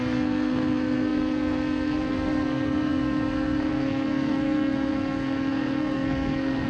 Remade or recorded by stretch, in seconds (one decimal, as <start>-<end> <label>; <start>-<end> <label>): 0.0-6.7 remade